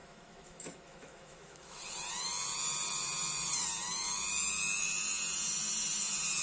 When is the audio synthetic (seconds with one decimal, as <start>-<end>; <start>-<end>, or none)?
0.0-1.8